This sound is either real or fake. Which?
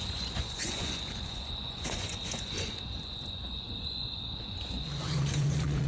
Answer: fake